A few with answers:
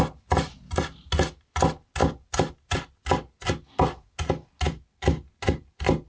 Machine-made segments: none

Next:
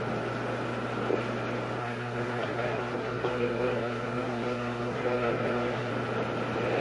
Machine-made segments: 1.8-5.9 (codec, SNAC)

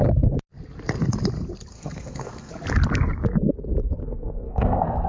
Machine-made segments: 1.7-2.5 (codec, SNAC); 4.0-5.1

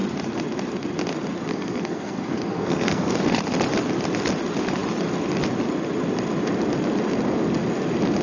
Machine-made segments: 1.5-3.4 (codec, SNAC)

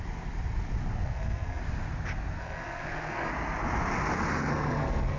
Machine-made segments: 1.0-1.6 (codec, SNAC); 2.4-3.3; 4.4-5.2

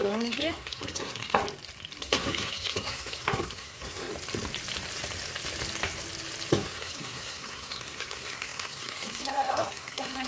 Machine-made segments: 0.0-1.4 (codec, SNAC); 2.0-4.1; 6.5-10.3